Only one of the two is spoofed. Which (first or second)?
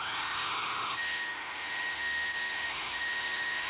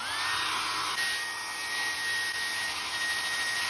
first